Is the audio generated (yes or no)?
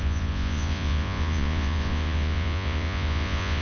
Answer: yes